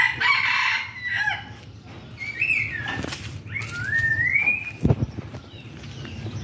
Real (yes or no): yes